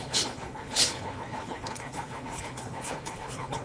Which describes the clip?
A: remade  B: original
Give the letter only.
A